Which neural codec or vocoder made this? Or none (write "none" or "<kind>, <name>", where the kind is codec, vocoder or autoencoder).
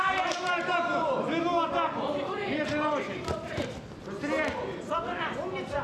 none